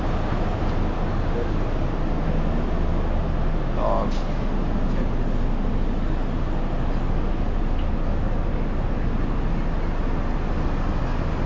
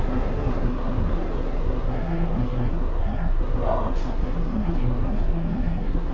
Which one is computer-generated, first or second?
second